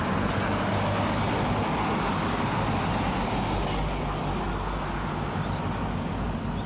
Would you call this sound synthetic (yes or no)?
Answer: no